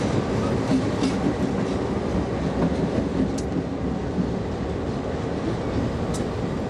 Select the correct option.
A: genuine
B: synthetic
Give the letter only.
A